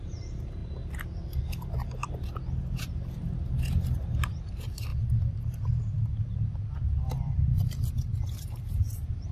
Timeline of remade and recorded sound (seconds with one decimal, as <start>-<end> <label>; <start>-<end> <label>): 0.0-0.6 remade; 0.6-2.8 recorded; 2.8-9.3 remade